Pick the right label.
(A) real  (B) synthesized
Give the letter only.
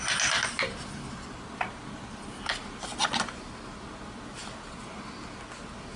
A